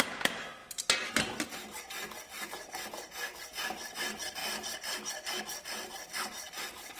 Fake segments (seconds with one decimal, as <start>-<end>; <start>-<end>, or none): none